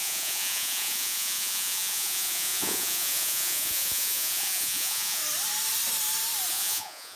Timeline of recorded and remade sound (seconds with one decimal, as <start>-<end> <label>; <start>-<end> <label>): 0.0-5.2 remade; 5.2-6.5 recorded; 6.5-7.2 remade